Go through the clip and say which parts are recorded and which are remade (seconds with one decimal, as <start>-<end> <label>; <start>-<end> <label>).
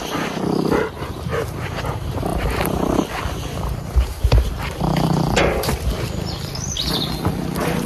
0.0-7.9 recorded